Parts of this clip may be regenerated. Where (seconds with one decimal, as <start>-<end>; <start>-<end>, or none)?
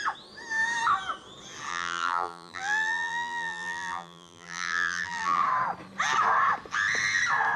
1.7-5.4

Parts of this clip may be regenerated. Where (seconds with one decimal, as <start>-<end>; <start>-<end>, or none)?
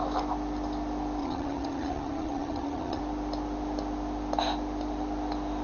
1.2-3.0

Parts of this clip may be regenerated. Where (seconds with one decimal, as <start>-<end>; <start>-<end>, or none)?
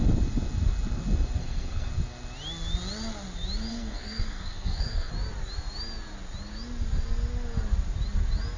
1.4-1.9; 3.7-5.1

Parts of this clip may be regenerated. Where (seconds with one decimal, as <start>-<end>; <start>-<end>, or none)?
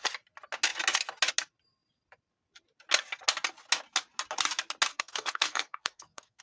4.9-6.4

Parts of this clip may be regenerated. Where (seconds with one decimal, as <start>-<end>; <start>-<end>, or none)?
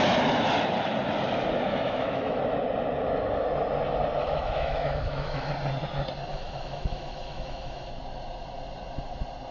1.7-2.4; 4.2-5.5; 6.3-7.9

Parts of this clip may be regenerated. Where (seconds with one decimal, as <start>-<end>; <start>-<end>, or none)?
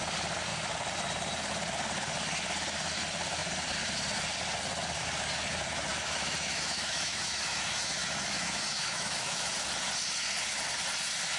5.9-9.5